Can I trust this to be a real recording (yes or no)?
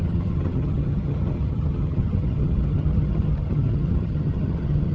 no